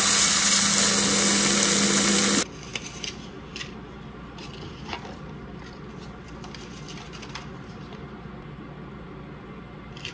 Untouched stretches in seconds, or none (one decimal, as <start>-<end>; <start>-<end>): 0.0-10.1